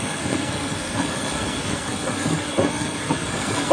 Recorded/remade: remade